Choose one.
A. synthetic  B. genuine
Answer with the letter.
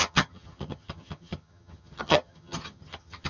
A